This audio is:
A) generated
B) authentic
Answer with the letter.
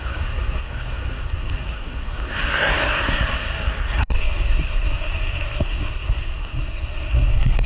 A